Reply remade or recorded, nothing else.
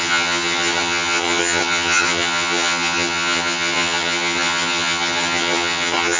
remade